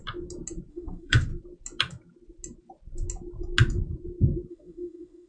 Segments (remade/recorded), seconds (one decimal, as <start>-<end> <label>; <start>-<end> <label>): 0.0-0.7 recorded; 0.7-1.3 remade; 1.3-4.5 recorded; 4.5-5.3 remade